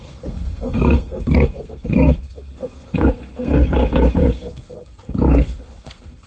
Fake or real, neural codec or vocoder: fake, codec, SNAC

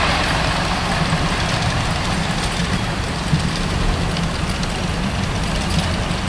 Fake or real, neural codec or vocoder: real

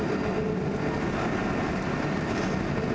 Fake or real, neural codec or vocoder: real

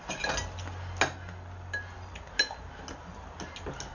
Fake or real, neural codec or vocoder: real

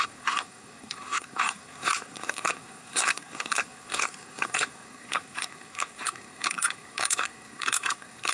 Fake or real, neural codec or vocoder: fake, codec, SNAC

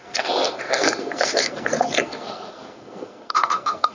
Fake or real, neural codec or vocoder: fake, codec, SNAC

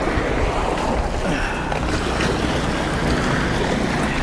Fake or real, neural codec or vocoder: real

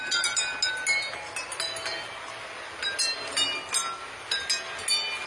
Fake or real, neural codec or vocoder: real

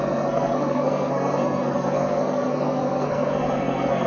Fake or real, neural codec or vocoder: fake, codec, SNAC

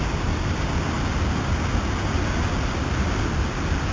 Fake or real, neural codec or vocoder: real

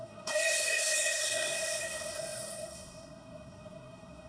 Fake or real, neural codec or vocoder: fake, codec, SNAC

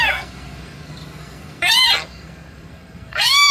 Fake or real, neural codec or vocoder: fake, codec, SNAC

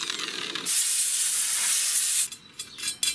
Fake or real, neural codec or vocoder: real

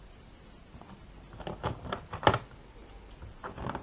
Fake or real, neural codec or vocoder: real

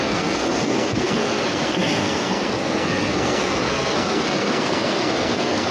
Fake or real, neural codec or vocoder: fake, codec, SNAC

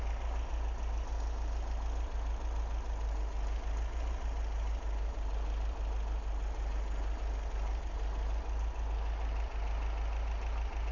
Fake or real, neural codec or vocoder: real